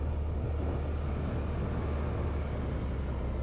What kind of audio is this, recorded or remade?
recorded